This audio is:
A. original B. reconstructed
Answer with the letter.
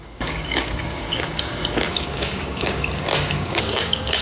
B